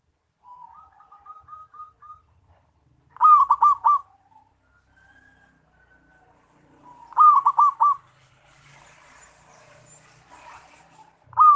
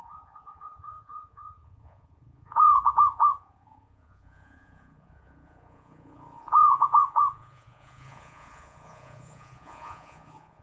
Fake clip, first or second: second